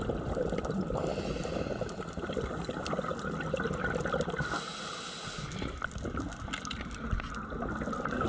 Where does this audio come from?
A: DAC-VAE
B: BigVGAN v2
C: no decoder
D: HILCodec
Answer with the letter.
C